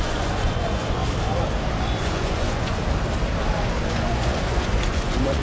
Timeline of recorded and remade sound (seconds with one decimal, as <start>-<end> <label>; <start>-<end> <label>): 0.0-1.0 remade; 1.0-1.8 recorded; 1.8-2.8 remade; 2.8-3.8 recorded; 3.8-5.4 remade